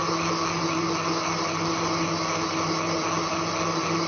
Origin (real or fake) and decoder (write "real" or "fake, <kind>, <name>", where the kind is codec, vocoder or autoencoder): real